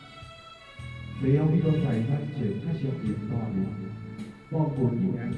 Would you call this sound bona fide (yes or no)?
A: yes